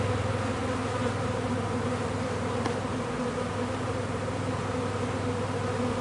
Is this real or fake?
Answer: real